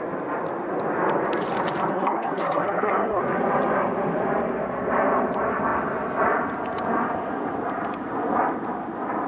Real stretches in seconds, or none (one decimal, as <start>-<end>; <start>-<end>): 0.0-1.9; 3.2-9.3

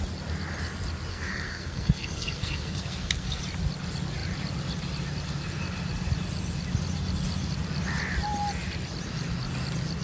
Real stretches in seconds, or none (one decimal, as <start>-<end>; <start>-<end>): 0.0-1.1; 3.4-10.0

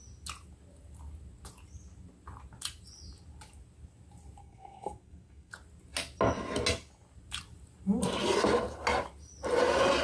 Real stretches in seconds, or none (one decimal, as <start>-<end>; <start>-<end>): 0.0-4.4; 5.5-10.0

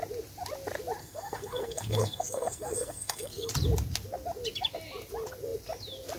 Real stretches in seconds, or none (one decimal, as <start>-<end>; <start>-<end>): 0.0-1.0; 3.5-6.2

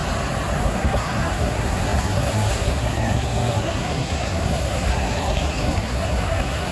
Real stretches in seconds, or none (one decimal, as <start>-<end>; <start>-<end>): 0.0-0.6